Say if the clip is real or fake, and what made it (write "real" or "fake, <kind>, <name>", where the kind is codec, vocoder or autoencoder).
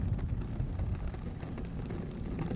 real